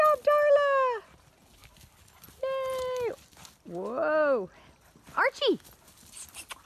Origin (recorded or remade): recorded